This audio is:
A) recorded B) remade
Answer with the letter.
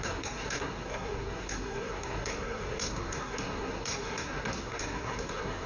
B